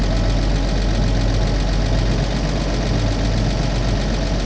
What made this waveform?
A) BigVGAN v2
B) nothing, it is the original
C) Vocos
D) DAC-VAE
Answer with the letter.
B